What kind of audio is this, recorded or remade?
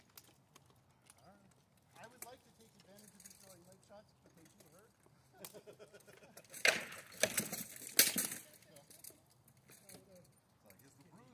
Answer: recorded